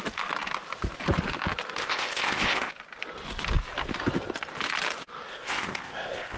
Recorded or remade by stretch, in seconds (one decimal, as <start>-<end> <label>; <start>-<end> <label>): 0.0-1.8 recorded; 1.8-2.7 remade; 2.7-5.3 recorded; 5.3-6.4 remade

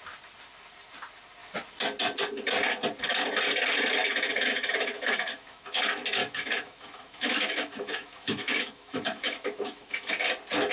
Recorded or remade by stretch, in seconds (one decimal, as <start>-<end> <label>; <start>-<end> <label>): 0.0-4.0 recorded; 4.0-5.8 remade; 5.8-6.2 recorded; 6.2-10.1 remade; 10.1-10.7 recorded

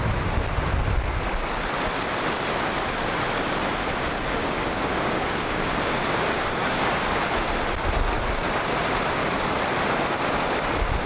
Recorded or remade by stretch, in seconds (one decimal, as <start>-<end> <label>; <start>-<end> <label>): 0.0-4.4 recorded; 4.4-7.2 remade; 7.2-11.1 recorded

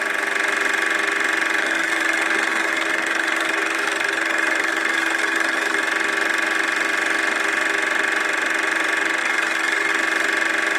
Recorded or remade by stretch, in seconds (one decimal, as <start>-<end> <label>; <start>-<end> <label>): 0.0-1.6 recorded; 1.6-5.8 remade; 5.8-9.2 recorded; 9.2-9.9 remade; 9.9-10.8 recorded

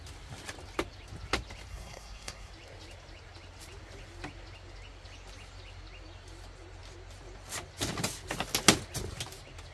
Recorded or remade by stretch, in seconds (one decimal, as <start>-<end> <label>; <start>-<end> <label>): 0.0-1.7 recorded; 1.7-2.5 remade; 2.5-9.7 recorded